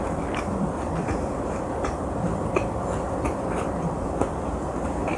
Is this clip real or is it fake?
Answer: fake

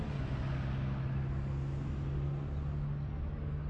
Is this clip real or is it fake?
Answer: real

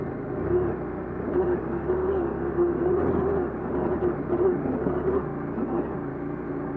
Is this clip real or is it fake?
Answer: real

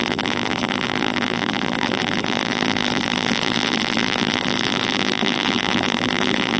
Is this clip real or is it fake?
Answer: fake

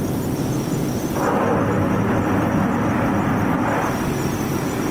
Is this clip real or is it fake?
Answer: real